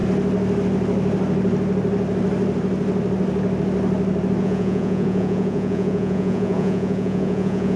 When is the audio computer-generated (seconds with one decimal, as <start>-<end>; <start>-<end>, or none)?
4.4-7.8